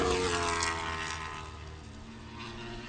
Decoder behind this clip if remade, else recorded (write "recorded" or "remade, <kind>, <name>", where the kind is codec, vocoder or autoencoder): recorded